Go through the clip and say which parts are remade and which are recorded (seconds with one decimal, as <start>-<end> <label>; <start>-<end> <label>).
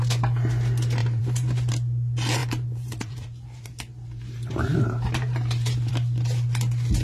0.0-1.0 recorded; 1.0-1.7 remade; 1.7-2.4 recorded; 2.4-5.9 remade; 5.9-7.0 recorded